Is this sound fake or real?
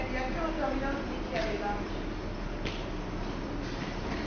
real